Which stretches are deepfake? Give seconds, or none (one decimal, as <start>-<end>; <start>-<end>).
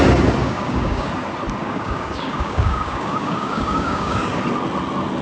0.4-1.1; 1.6-4.4